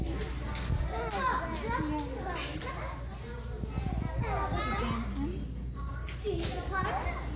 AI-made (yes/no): no